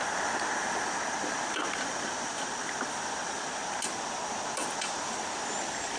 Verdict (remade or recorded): recorded